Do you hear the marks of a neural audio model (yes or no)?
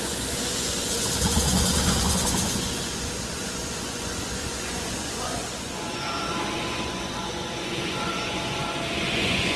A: yes